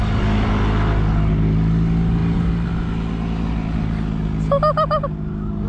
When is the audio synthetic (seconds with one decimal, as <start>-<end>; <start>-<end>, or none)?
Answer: none